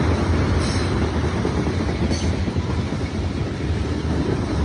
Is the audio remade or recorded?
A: recorded